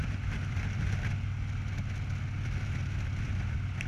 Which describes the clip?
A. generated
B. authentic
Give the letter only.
B